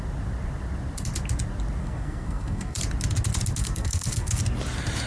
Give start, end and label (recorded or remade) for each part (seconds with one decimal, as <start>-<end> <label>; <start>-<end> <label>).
0.0-1.8 recorded; 1.8-2.8 remade; 2.8-3.6 recorded; 3.6-4.4 remade; 4.4-5.1 recorded